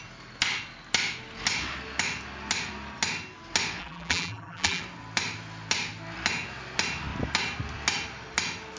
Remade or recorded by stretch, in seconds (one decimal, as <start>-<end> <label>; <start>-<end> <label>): 0.0-3.8 recorded; 3.8-4.8 remade; 4.8-8.8 recorded